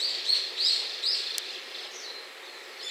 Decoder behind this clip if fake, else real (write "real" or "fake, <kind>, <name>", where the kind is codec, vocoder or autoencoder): real